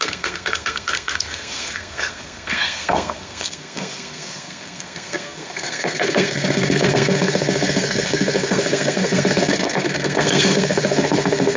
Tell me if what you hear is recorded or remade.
remade